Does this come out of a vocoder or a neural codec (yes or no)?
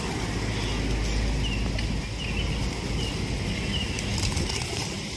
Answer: no